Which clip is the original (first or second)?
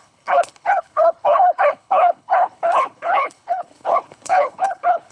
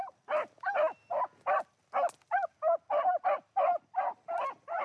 second